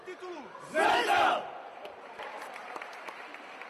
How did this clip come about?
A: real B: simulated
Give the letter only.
B